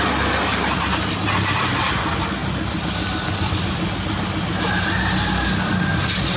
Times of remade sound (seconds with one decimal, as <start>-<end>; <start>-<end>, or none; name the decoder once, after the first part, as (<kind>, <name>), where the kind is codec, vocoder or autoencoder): none